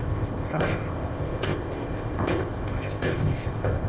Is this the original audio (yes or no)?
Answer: no